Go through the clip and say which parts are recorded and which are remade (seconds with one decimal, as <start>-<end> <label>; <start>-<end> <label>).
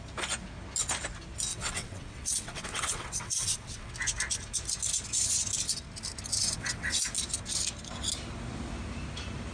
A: 0.0-1.5 recorded; 1.5-3.9 remade; 3.9-6.4 recorded; 6.4-7.0 remade; 7.0-9.5 recorded